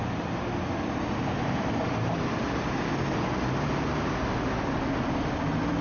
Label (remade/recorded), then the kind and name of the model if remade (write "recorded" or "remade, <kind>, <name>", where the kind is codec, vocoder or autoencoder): recorded